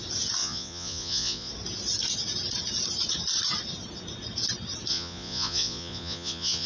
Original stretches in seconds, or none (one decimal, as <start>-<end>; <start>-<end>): 0.0-0.4; 1.5-4.9